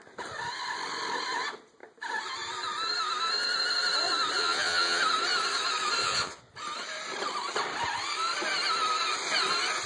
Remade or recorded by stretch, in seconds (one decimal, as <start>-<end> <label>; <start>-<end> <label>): 0.0-4.4 recorded; 4.4-5.0 remade; 5.0-6.0 recorded; 6.0-6.5 remade; 6.5-9.9 recorded